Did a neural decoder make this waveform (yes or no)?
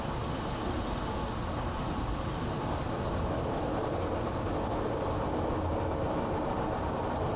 no